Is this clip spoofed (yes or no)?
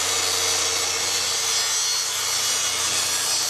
no